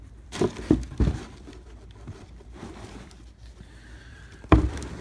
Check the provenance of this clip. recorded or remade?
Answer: remade